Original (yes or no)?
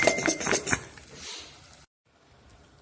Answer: yes